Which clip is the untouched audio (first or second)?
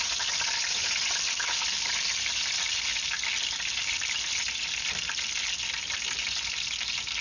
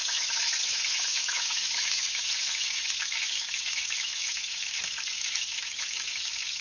first